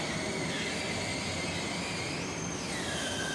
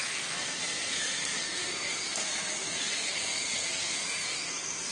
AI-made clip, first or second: second